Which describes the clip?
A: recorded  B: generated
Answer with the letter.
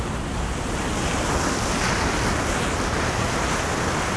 A